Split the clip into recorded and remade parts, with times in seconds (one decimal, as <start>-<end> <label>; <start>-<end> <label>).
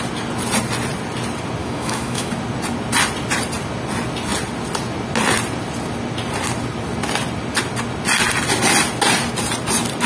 0.0-1.6 recorded; 1.6-2.3 remade; 2.3-10.1 recorded